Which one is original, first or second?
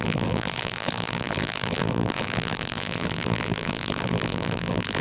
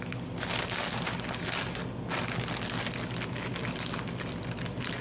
second